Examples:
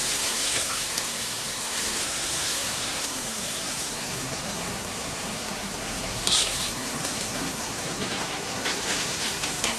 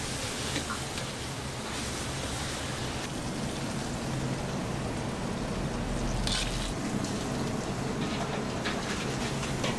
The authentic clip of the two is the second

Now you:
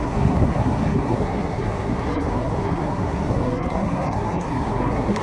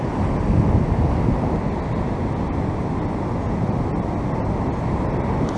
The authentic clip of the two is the second